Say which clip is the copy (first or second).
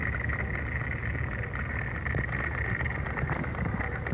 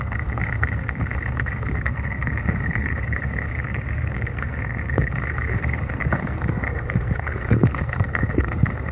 second